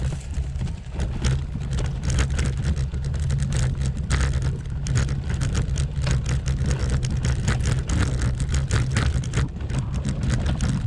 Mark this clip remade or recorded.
recorded